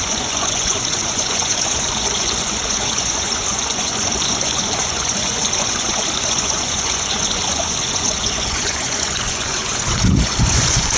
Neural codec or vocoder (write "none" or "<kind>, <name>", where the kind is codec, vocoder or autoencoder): vocoder, Vocos